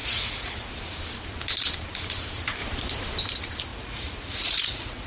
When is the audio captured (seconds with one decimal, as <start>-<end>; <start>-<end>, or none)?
0.7-3.7